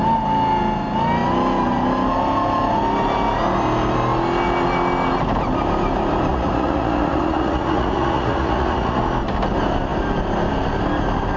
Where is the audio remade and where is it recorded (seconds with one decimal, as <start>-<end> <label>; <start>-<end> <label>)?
0.0-6.3 recorded; 6.3-9.0 remade; 9.0-11.4 recorded